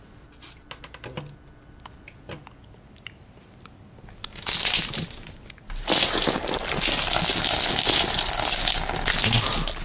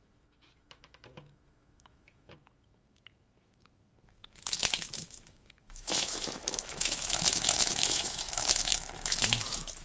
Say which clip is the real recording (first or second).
first